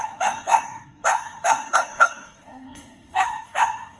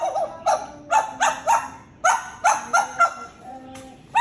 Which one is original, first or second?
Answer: second